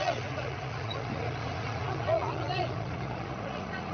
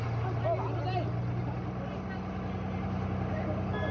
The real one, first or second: second